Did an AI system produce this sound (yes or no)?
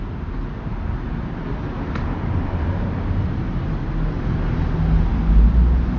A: no